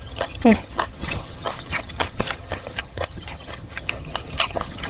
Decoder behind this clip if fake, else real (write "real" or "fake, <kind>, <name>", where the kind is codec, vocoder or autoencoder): fake, vocoder, HiFi-GAN